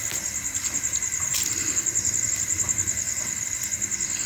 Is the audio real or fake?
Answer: fake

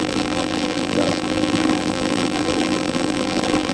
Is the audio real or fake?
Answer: fake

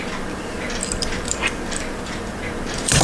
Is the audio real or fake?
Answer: fake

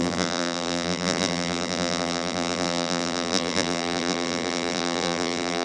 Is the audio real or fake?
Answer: fake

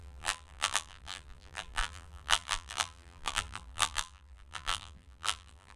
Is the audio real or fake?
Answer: fake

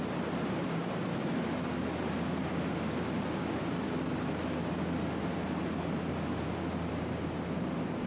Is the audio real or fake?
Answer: real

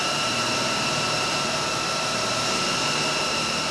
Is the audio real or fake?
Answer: fake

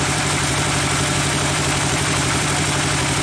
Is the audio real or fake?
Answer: fake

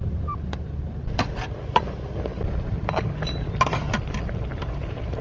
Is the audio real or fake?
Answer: fake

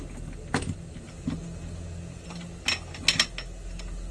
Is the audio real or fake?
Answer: real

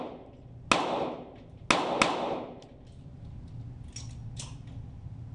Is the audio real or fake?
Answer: real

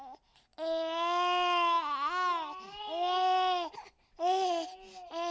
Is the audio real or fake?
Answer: real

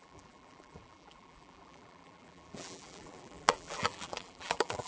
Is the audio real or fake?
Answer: fake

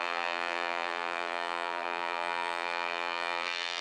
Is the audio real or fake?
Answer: fake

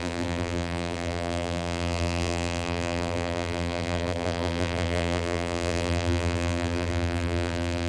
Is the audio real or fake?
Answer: fake